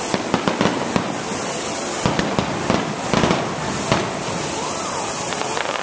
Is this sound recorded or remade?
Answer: recorded